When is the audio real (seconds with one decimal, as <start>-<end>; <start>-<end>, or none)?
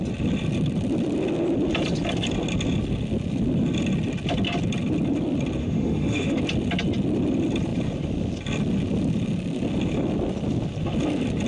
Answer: 0.0-5.6; 6.4-11.5